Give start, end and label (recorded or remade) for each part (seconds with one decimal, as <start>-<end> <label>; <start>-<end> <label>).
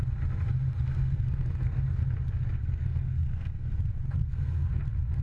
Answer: 0.0-1.0 recorded; 1.0-1.8 remade; 1.8-2.6 recorded; 2.6-3.7 remade; 3.7-4.2 recorded; 4.2-4.8 remade; 4.8-5.2 recorded